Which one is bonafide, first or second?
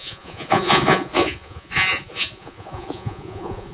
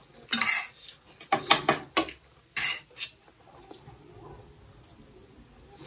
second